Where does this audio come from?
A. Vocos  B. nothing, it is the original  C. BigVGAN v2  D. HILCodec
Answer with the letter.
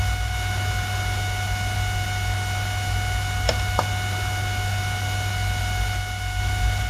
B